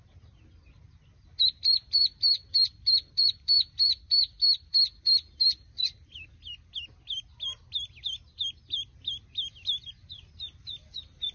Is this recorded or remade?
recorded